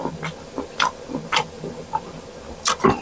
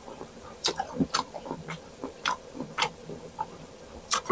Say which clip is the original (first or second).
first